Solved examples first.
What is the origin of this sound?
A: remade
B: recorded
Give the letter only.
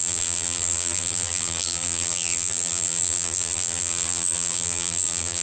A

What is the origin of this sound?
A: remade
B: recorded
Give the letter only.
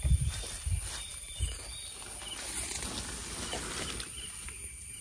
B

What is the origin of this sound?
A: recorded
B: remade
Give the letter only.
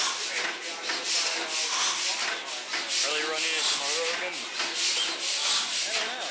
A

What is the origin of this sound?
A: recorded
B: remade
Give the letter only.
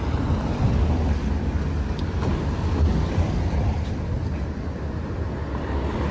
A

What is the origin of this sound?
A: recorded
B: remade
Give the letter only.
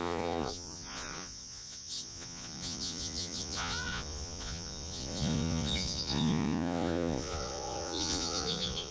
B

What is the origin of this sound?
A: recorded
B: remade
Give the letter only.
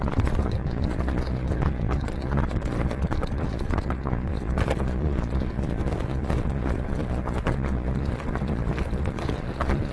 B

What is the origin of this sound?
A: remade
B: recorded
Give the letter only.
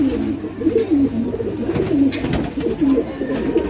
B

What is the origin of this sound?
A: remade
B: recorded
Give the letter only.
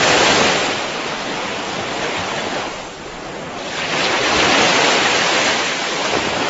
B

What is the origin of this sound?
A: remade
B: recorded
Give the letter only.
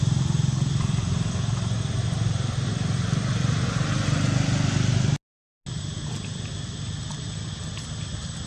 B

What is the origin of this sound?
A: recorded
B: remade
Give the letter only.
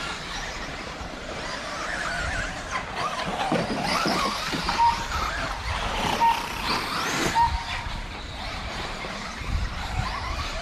B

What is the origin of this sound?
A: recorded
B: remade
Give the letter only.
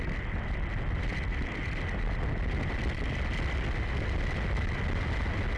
A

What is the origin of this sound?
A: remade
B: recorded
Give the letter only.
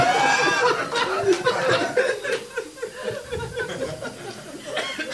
B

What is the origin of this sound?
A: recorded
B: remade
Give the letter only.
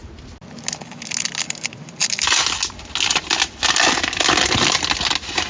A